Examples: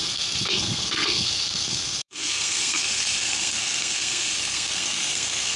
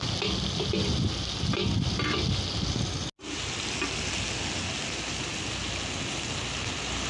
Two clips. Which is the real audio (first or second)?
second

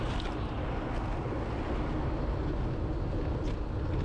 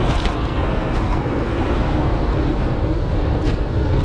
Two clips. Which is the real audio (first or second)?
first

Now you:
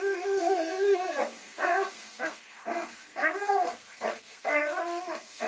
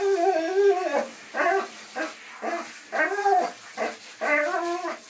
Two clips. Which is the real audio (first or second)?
second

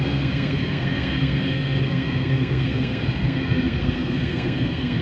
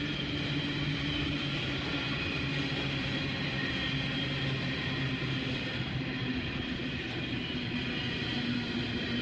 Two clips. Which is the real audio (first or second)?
second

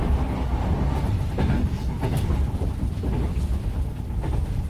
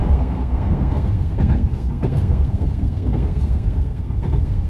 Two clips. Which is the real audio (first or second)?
first